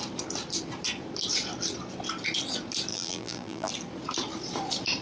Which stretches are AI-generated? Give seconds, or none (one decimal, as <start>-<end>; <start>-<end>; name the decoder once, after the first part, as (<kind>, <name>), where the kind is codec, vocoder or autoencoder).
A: 2.9-3.7 (vocoder, BigVGAN v2)